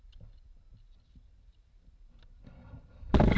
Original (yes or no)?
yes